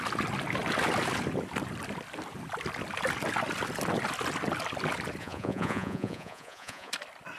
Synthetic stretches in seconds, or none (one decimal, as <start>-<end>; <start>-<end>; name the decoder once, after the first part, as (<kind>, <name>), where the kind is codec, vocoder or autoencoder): 5.2-6.9 (vocoder, Vocos)